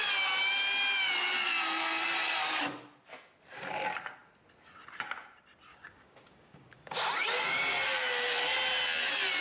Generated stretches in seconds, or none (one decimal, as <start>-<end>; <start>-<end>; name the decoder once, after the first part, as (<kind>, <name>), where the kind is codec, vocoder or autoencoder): 5.7-7.6 (codec, DAC)